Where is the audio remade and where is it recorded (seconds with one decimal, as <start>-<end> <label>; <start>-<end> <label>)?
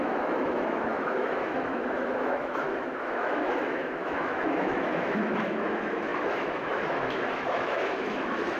0.0-8.6 remade